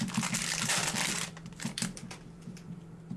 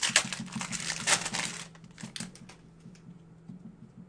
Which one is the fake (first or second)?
first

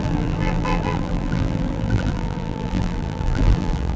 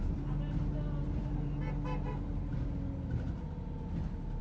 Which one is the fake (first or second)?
first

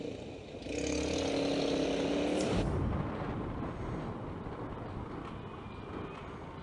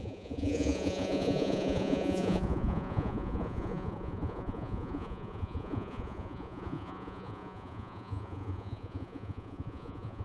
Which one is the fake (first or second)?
second